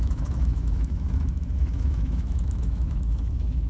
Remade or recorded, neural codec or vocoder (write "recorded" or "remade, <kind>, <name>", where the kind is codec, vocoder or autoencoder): remade, autoencoder, DAC-VAE